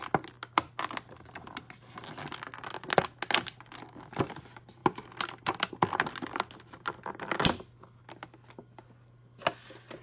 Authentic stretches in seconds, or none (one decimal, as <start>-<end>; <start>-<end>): 0.0-10.0